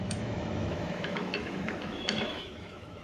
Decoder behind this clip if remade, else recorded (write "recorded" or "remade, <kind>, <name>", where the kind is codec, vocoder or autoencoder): remade, autoencoder, DAC-VAE